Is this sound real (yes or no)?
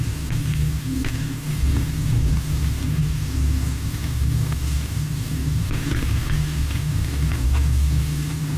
no